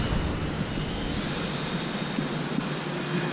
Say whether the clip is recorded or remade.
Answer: recorded